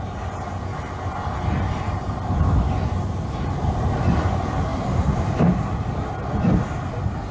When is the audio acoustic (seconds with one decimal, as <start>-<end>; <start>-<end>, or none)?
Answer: 0.0-4.7; 6.1-7.3